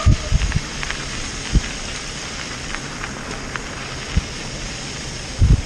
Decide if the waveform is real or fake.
fake